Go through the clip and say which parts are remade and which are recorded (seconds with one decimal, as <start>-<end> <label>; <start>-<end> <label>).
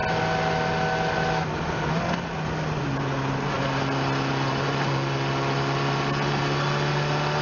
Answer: 0.0-7.4 recorded